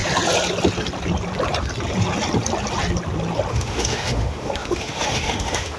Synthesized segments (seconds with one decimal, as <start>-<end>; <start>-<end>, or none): 3.5-5.8